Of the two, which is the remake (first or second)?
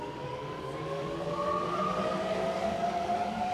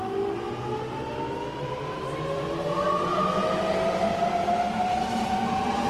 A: first